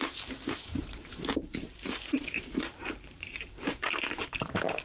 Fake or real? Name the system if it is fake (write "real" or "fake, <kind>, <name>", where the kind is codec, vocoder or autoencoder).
fake, vocoder, BigVGAN v2